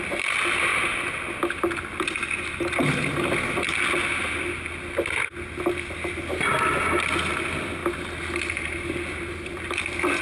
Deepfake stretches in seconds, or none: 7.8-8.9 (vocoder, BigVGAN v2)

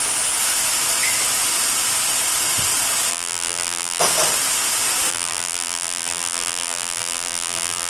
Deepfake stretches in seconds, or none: 3.1-4.0 (vocoder, BigVGAN v2); 5.1-7.9

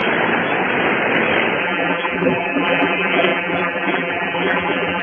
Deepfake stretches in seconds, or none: 1.6-5.0 (vocoder, BigVGAN v2)

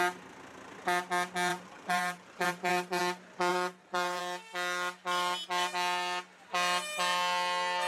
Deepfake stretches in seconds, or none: 1.5-3.0 (vocoder, BigVGAN v2); 3.5-4.2

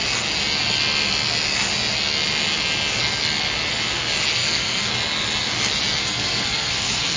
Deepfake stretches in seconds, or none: 4.3-4.9 (codec, SNAC); 6.0-7.2

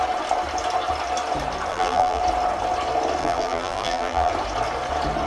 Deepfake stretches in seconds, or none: 1.7-2.2 (vocoder, BigVGAN v2); 3.2-4.3

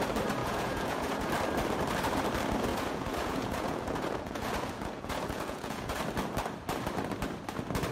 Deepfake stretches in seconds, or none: 0.4-1.3 (vocoder, Vocos); 2.7-6.0

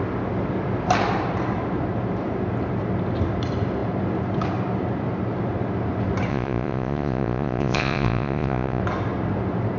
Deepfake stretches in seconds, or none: 6.3-8.8 (vocoder, Vocos)